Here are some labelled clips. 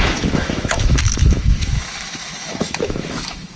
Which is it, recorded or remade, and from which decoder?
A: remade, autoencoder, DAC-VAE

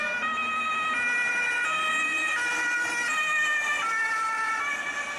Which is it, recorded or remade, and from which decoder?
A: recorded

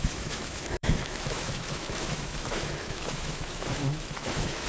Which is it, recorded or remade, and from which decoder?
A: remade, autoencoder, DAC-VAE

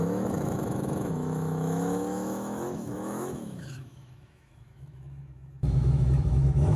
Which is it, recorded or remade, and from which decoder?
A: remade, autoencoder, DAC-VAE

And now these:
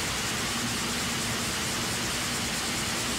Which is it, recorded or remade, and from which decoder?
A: recorded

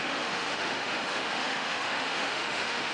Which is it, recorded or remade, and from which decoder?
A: remade, autoencoder, DAC-VAE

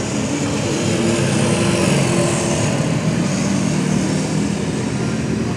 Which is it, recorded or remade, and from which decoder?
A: recorded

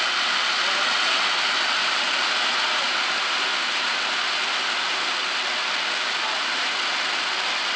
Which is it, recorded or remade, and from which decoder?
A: recorded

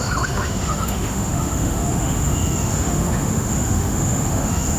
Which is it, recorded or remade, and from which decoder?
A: remade, autoencoder, DAC-VAE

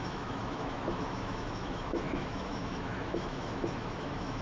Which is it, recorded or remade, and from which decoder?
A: remade, autoencoder, DAC-VAE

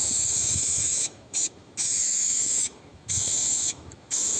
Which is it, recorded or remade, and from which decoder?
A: remade, autoencoder, DAC-VAE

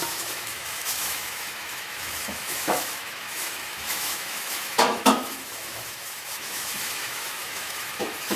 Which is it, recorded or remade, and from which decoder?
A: remade, autoencoder, DAC-VAE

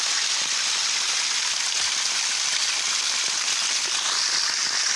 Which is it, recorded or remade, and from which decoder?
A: recorded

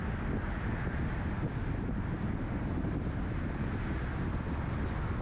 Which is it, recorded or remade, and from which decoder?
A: recorded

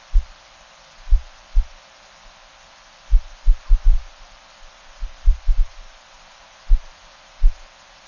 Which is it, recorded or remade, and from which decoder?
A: recorded